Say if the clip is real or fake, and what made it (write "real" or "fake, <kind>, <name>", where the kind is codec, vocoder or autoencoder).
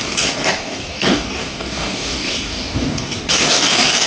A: fake, codec, DAC